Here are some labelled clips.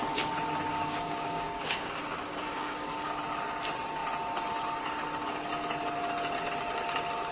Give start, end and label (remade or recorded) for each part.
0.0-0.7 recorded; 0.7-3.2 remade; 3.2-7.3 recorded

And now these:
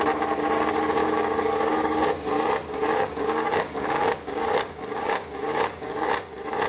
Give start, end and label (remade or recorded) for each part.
0.0-1.0 recorded; 1.0-2.0 remade; 2.0-2.7 recorded; 2.7-6.1 remade; 6.1-6.7 recorded

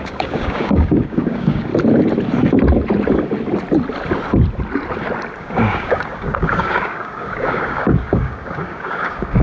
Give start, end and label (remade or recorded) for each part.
0.0-1.7 remade; 1.7-5.4 recorded; 5.4-9.4 remade

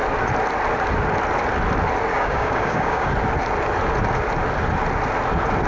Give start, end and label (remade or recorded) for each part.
0.0-2.1 recorded; 2.1-3.1 remade; 3.1-5.7 recorded

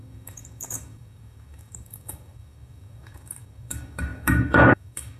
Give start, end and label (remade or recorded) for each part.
0.0-5.2 remade

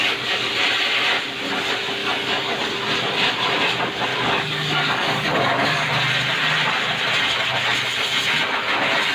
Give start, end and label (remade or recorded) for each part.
0.0-0.5 remade; 0.5-2.0 recorded; 2.0-2.5 remade; 2.5-4.1 recorded; 4.1-5.9 remade; 5.9-9.1 recorded